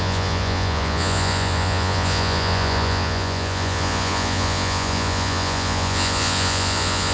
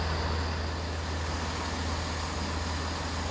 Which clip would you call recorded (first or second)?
second